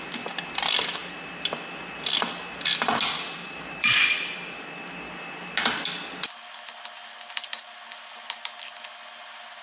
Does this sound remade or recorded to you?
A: remade